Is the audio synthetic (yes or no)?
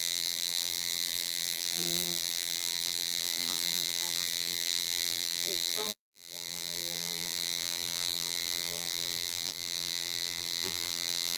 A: yes